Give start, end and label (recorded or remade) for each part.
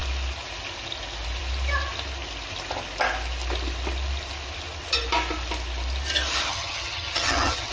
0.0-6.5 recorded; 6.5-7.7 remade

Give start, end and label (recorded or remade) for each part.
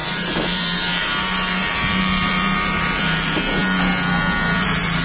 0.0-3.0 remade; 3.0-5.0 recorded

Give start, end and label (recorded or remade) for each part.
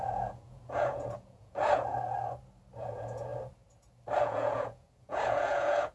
0.0-1.9 remade; 1.9-2.8 recorded; 2.8-3.3 remade; 3.3-4.2 recorded; 4.2-5.9 remade